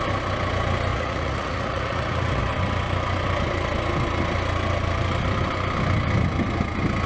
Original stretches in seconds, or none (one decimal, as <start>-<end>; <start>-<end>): 0.0-0.9; 2.4-7.1

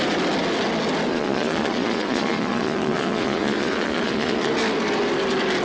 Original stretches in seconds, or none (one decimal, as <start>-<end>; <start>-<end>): 0.0-1.1; 4.5-5.6

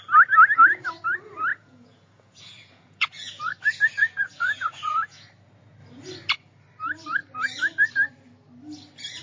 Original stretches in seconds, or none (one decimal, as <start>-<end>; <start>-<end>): 0.0-1.5; 3.3-4.0; 5.3-9.2

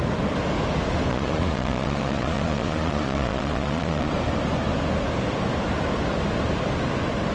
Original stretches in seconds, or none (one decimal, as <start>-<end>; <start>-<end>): 0.0-1.1; 4.1-7.3

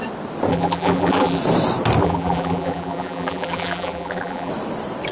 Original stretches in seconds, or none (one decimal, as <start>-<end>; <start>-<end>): 0.0-0.5; 1.4-2.0; 4.5-5.1

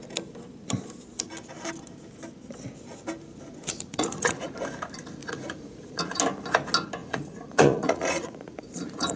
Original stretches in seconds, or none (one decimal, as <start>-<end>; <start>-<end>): 0.0-3.9; 4.5-5.2; 6.0-7.0

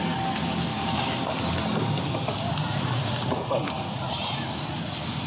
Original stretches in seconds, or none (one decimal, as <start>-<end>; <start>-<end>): 0.0-5.3

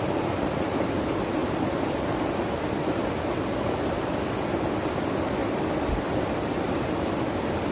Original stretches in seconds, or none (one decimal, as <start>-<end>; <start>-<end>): 0.0-7.7